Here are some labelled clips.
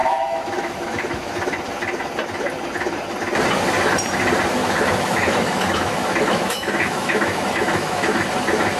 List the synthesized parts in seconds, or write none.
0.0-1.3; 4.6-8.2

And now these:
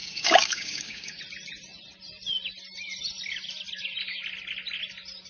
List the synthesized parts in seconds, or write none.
0.0-1.2

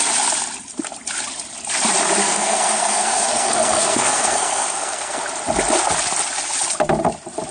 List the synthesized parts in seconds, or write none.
2.2-5.2

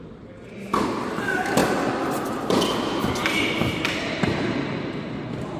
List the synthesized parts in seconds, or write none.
1.6-2.6; 3.2-5.6

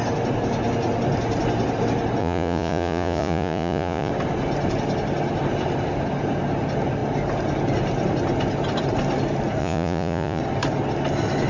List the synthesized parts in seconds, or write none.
2.2-4.1; 9.6-10.4